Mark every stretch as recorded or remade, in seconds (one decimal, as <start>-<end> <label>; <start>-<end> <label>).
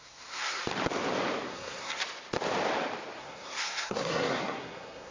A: 0.0-0.6 remade; 0.6-1.5 recorded; 1.5-2.0 remade; 2.0-3.2 recorded; 3.2-5.1 remade